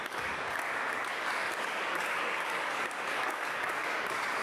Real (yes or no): no